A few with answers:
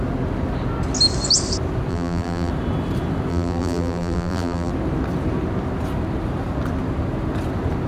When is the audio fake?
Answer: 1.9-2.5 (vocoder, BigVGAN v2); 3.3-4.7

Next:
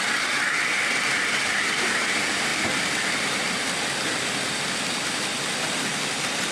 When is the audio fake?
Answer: none

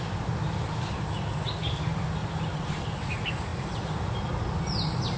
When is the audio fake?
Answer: 2.2-2.9 (vocoder, BigVGAN v2)

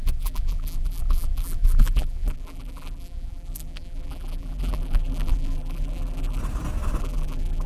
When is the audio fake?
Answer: 0.0-6.4 (vocoder, BigVGAN v2); 7.0-7.7

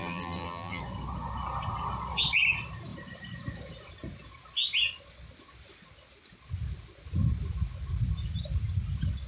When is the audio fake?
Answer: 0.0-0.8 (vocoder, BigVGAN v2)

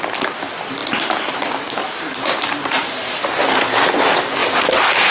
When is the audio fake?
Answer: 0.8-3.1 (vocoder, BigVGAN v2)

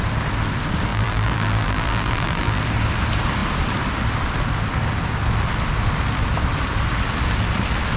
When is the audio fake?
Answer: 0.9-2.6 (vocoder, BigVGAN v2)